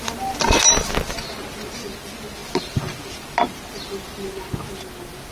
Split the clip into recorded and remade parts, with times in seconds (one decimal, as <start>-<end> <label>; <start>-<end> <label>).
0.0-5.3 recorded